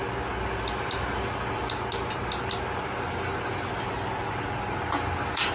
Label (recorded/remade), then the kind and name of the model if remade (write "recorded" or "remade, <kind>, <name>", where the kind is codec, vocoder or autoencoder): recorded